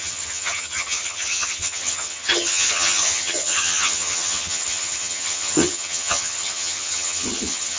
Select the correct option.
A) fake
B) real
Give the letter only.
A